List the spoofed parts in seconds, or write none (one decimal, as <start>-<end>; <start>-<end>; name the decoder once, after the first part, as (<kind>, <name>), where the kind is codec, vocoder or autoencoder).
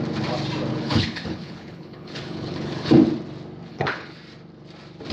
0.7-2.9 (codec, HILCodec); 3.7-4.2